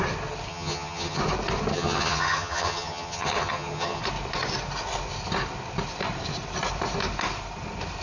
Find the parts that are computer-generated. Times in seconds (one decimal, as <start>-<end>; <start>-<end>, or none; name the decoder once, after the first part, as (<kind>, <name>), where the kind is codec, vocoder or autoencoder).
0.5-1.2 (vocoder, HiFi-GAN); 1.7-4.0